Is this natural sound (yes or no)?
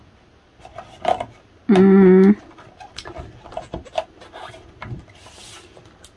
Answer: yes